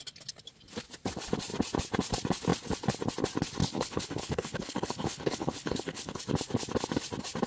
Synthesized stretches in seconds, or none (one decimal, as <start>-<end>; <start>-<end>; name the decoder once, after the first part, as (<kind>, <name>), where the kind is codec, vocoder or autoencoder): 3.6-6.2 (codec, HILCodec)